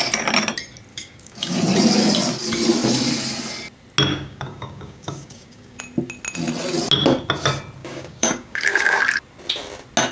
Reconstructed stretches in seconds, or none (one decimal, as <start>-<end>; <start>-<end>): 0.9-1.6; 4.1-5.8; 7.8-9.0